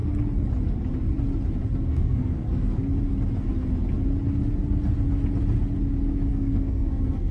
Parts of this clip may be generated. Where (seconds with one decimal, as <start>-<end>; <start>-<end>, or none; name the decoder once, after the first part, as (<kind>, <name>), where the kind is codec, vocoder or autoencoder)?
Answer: 1.9-2.8 (codec, SNAC); 6.3-7.3